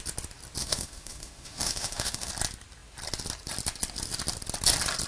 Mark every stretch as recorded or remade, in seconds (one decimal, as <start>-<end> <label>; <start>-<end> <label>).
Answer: 0.0-0.6 recorded; 0.6-2.3 remade; 2.3-5.1 recorded